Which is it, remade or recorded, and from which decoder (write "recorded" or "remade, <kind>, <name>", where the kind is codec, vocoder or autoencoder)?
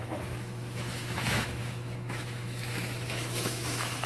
remade, autoencoder, DAC-VAE